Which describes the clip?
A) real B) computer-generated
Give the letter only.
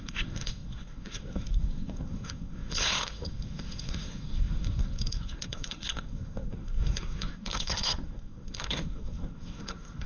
B